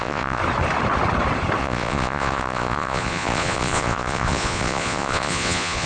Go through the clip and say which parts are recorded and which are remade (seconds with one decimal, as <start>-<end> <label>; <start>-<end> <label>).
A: 0.0-0.4 remade; 0.4-1.6 recorded; 1.6-5.9 remade